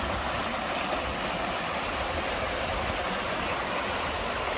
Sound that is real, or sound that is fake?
real